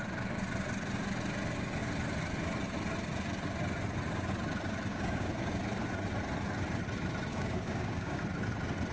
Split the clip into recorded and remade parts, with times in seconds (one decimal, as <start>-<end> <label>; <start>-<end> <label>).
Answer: 0.0-4.9 recorded; 4.9-5.6 remade; 5.6-7.3 recorded; 7.3-8.2 remade; 8.2-8.9 recorded